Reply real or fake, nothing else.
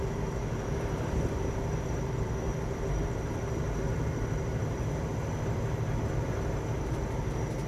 fake